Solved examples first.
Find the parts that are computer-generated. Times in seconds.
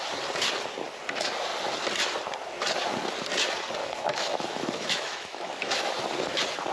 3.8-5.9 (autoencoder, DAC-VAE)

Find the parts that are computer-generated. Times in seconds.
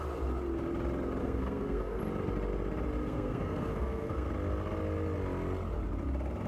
1.2-2.0 (codec, SNAC); 3.0-4.3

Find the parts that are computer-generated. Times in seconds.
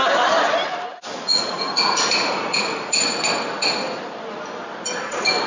0.9-3.0 (vocoder, Vocos)